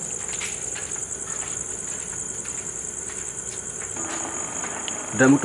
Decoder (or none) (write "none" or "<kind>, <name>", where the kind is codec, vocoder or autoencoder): none